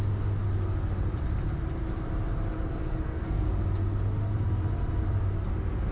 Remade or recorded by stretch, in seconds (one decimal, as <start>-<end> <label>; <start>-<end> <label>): 0.0-2.8 recorded; 2.8-3.5 remade; 3.5-5.9 recorded